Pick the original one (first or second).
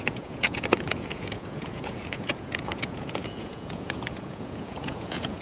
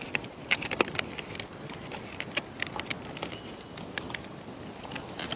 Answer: second